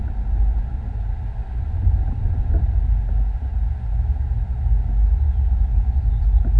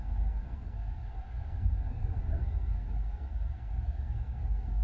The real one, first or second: first